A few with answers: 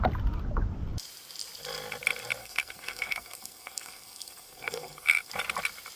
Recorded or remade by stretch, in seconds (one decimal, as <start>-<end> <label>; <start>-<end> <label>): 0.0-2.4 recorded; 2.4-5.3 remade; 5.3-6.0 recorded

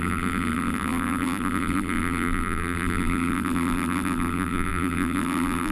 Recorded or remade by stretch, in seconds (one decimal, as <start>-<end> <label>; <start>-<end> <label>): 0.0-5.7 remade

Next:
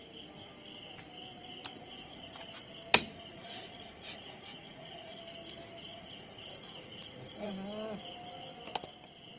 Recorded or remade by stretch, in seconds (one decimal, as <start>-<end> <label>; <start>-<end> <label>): 0.0-1.8 recorded; 1.8-2.5 remade; 2.5-3.1 recorded; 3.1-5.2 remade; 5.2-5.9 recorded; 5.9-7.5 remade; 7.5-9.4 recorded